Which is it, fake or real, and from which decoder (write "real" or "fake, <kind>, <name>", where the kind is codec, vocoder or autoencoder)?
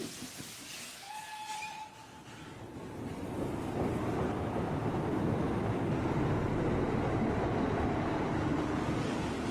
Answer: real